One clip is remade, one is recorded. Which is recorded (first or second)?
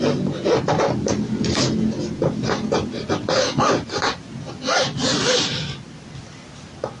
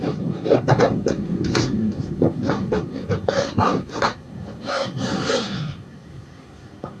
first